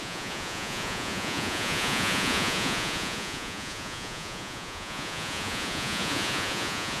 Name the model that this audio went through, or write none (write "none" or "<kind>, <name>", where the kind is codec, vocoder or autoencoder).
vocoder, Vocos